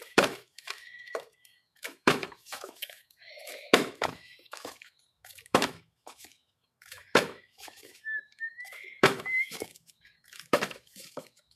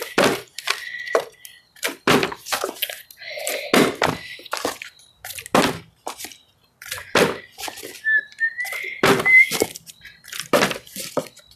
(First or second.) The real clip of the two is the second